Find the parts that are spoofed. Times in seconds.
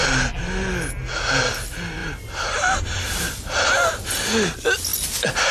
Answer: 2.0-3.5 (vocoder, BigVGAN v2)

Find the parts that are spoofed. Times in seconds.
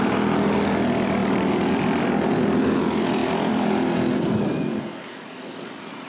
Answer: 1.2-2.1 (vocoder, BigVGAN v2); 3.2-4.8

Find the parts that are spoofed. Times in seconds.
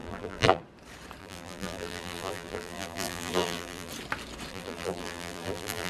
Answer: 0.0-0.6 (vocoder, BigVGAN v2); 1.2-3.9; 4.5-5.9